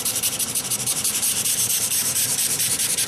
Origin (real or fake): fake